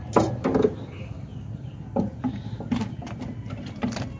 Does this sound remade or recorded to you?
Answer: recorded